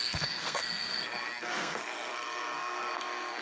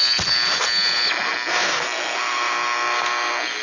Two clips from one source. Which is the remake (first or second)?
first